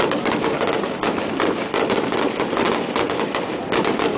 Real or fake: real